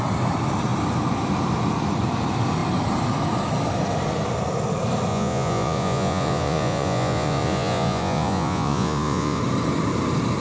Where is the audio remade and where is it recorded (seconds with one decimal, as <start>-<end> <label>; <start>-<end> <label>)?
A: 0.0-5.1 recorded; 5.1-9.4 remade; 9.4-10.4 recorded